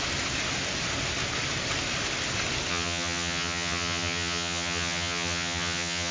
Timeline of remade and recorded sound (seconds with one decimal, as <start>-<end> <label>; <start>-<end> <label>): 0.0-2.7 recorded; 2.7-6.1 remade